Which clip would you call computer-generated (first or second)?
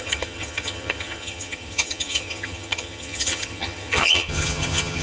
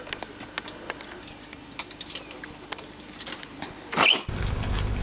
first